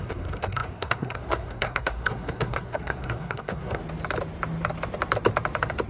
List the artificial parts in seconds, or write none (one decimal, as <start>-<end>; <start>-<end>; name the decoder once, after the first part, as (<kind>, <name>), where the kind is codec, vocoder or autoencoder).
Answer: 0.0-3.8 (codec, SNAC)